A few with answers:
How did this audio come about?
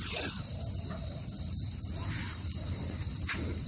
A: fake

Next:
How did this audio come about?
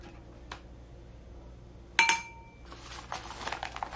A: real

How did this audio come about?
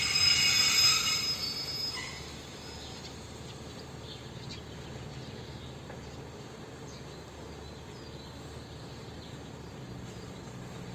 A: real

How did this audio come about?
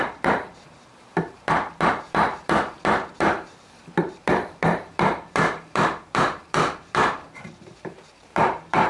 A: fake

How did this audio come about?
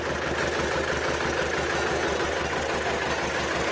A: real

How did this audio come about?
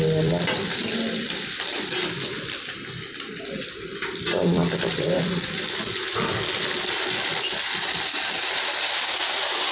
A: fake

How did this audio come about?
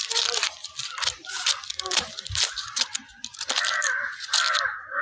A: fake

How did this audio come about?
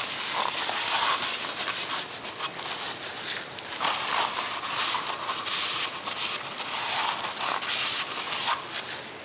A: real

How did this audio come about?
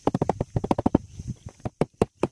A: real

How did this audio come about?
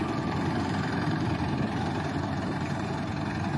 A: fake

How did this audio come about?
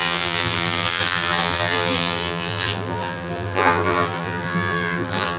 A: fake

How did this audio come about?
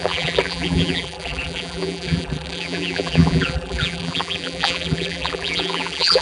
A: fake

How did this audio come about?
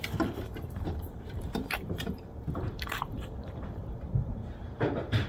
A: fake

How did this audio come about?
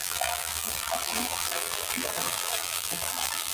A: fake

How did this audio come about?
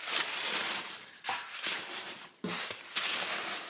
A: fake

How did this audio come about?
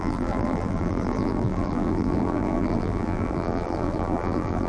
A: fake